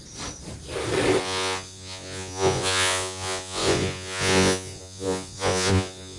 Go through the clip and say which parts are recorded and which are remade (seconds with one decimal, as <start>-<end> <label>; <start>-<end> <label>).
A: 0.0-1.2 recorded; 1.2-6.2 remade